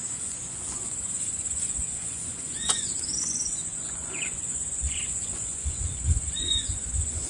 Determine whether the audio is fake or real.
fake